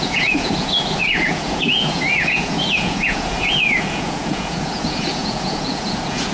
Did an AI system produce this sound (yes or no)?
yes